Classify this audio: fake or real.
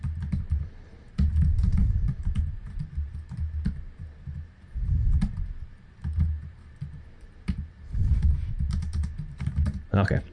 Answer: fake